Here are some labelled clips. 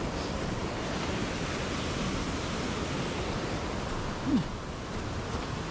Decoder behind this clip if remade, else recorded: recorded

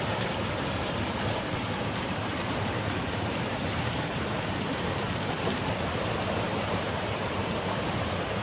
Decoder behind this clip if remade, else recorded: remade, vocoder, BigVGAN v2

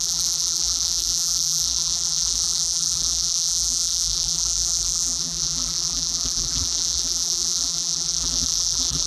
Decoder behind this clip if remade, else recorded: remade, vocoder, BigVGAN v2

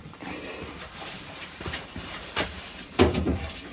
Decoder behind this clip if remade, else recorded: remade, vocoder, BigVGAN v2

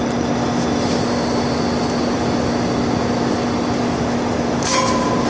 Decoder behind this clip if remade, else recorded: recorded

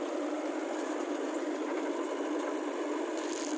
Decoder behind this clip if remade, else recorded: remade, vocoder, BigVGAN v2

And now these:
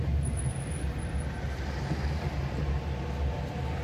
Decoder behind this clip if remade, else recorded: recorded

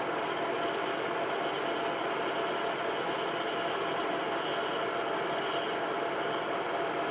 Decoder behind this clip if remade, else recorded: recorded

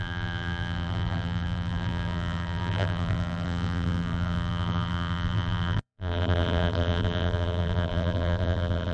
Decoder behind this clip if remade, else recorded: remade, vocoder, BigVGAN v2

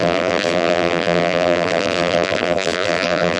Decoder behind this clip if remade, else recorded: remade, vocoder, BigVGAN v2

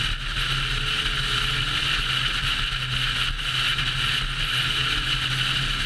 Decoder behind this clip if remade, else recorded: recorded